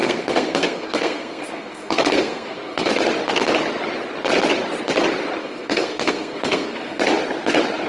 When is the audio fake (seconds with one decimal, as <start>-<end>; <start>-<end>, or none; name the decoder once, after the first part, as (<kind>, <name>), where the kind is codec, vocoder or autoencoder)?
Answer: 0.0-2.9 (codec, SNAC); 5.4-7.0